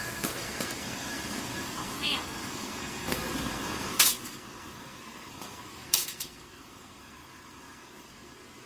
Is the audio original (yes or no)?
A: no